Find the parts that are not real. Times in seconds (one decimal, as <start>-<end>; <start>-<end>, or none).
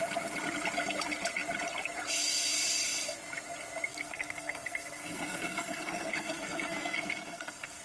3.9-7.8